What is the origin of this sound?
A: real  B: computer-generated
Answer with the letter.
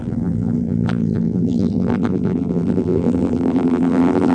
B